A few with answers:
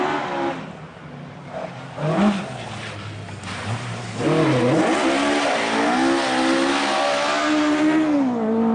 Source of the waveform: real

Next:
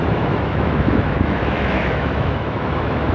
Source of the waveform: fake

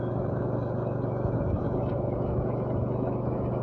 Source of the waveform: fake